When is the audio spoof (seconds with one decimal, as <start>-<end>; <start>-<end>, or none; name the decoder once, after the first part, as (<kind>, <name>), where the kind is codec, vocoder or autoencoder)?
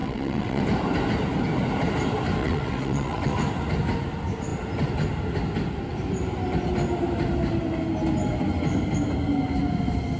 0.0-0.6 (vocoder, WaveNeXt); 2.4-3.3